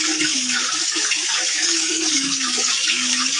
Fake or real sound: fake